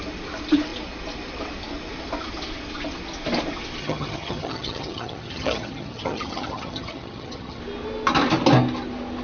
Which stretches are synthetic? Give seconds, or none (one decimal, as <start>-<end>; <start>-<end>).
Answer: 3.8-7.6

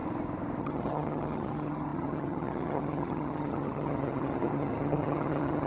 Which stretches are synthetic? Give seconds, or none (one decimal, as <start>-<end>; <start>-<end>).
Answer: 0.6-5.7

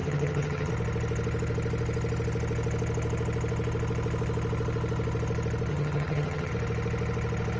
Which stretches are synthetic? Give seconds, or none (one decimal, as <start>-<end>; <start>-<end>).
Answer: 0.0-0.7; 5.7-6.5

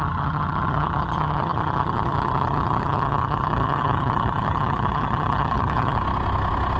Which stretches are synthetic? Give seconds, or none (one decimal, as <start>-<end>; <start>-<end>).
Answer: 0.0-6.0

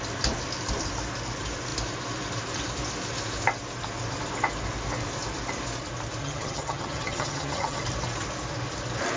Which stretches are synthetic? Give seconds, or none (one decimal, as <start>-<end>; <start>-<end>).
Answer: 6.2-7.8

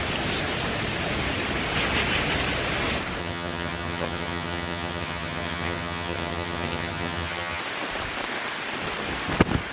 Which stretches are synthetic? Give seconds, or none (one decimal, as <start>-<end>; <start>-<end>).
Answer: 3.2-7.6

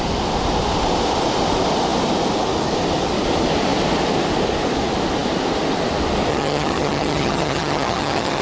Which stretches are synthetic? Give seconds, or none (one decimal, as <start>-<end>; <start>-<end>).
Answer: 6.3-8.4

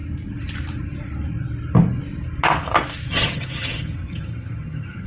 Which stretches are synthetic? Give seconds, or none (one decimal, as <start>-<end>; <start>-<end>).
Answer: 3.1-5.1